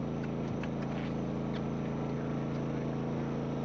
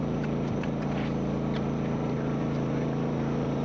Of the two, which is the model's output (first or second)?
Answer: second